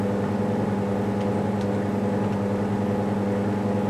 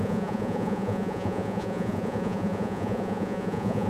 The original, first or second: first